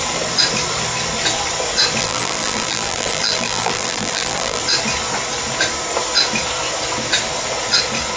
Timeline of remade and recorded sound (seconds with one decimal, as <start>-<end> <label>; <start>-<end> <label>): 0.0-2.0 recorded; 2.0-4.6 remade; 4.6-8.2 recorded